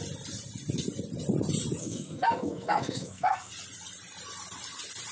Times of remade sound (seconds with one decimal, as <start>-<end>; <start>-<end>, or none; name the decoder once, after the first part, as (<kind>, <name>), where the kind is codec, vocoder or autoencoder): 1.8-3.5 (codec, SNAC)